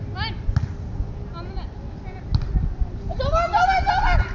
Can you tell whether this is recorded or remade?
recorded